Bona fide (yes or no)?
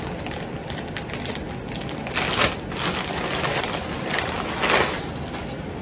yes